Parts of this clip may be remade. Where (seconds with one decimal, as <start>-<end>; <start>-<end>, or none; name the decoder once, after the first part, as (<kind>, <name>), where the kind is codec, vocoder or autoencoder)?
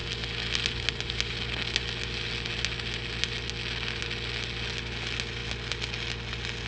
none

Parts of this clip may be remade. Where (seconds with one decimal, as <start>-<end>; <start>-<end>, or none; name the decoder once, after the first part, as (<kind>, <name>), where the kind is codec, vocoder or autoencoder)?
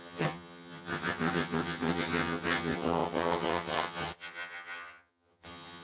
0.0-5.8 (vocoder, HiFi-GAN)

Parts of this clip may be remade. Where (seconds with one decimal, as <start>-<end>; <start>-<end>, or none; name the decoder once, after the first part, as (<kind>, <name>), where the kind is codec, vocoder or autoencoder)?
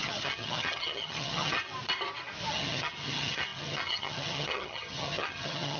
0.0-1.7 (vocoder, HiFi-GAN); 2.5-5.8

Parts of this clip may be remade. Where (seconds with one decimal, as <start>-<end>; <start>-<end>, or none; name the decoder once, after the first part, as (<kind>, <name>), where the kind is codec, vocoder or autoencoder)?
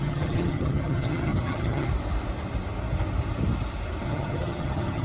0.0-1.9 (vocoder, HiFi-GAN); 4.0-5.0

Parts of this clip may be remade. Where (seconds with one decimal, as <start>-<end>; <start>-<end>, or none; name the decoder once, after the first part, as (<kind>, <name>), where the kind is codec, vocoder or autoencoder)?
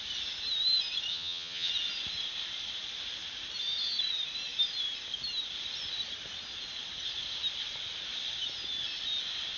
1.1-1.7 (vocoder, HiFi-GAN)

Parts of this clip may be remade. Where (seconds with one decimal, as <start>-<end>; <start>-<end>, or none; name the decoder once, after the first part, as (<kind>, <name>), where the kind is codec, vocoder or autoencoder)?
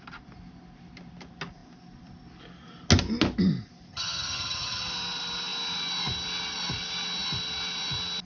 3.9-4.8 (vocoder, HiFi-GAN)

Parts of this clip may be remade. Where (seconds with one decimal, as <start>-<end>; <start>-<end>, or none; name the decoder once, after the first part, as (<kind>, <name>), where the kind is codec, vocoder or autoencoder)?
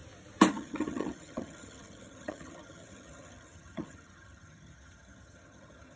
0.5-6.0 (vocoder, HiFi-GAN)